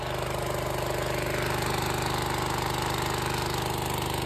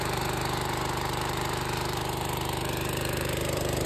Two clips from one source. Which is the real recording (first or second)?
first